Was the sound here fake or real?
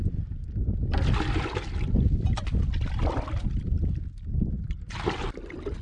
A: real